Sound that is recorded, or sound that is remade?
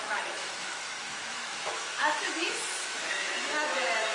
remade